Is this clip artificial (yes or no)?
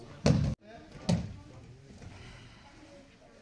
no